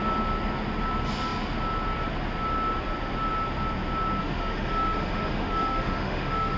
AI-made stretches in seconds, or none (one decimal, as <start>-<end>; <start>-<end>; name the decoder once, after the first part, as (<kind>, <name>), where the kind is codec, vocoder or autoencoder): 4.2-6.6 (autoencoder, DAC-VAE)